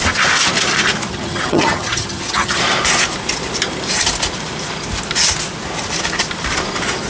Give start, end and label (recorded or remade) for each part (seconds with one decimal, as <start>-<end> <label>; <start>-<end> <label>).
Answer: 0.0-1.1 recorded; 1.1-2.6 remade; 2.6-7.1 recorded